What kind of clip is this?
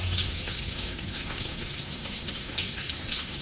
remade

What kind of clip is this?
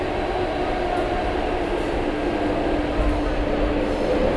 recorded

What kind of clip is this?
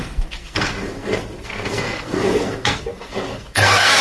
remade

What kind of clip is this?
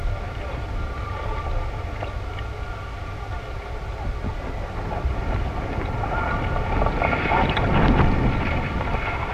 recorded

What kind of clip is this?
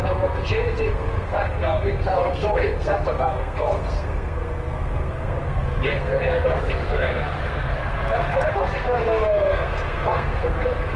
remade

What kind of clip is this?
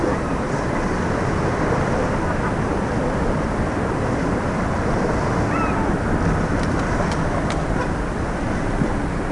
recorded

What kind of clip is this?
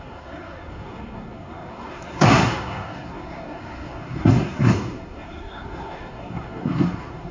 remade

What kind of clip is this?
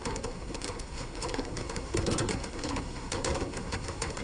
remade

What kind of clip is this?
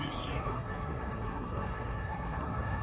remade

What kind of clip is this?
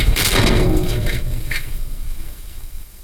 remade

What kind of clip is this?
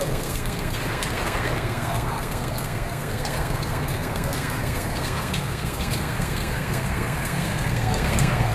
remade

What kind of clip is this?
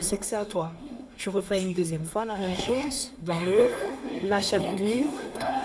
remade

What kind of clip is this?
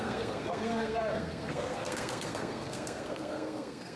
remade